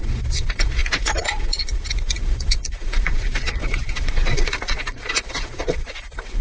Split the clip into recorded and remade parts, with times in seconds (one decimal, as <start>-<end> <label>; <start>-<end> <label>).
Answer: 0.0-6.4 remade